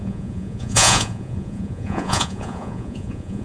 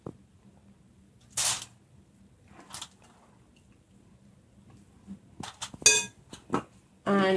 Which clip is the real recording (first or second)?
second